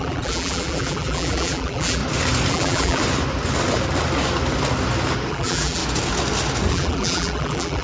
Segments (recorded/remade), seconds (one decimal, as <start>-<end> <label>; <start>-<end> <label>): 0.0-2.0 remade; 2.0-2.5 recorded; 2.5-3.0 remade; 3.0-5.3 recorded; 5.3-5.8 remade; 5.8-6.7 recorded; 6.7-7.8 remade